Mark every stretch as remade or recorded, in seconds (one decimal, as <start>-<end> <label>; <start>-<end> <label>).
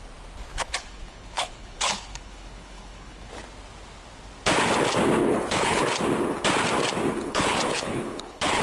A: 0.0-0.5 recorded; 0.5-3.3 remade; 3.3-5.2 recorded; 5.2-5.8 remade; 5.8-7.1 recorded; 7.1-8.6 remade